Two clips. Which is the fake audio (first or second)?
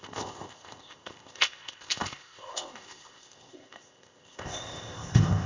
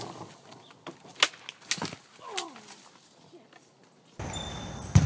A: first